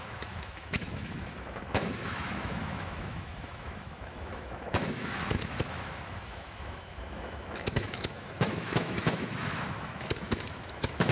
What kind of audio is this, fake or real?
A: fake